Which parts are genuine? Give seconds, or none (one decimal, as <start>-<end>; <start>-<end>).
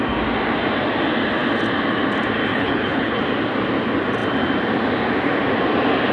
0.0-2.5; 3.2-6.1